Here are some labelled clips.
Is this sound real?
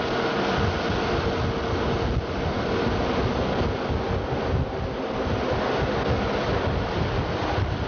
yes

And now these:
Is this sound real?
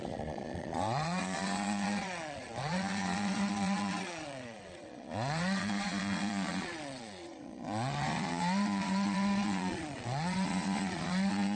no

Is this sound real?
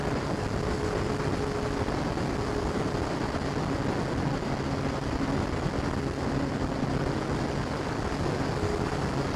yes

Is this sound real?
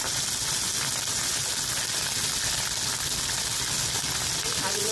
yes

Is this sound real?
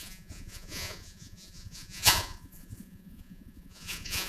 no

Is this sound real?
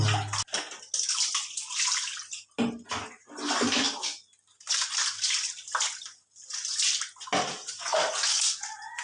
yes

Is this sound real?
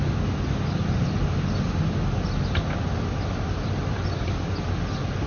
yes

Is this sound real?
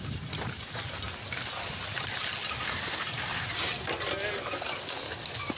yes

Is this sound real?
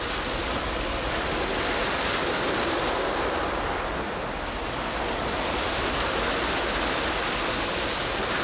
yes